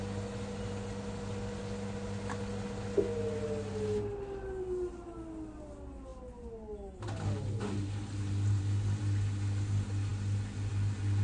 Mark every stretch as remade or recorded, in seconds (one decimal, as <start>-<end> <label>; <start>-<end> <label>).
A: 0.0-11.2 recorded